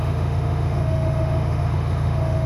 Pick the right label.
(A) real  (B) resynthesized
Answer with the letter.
B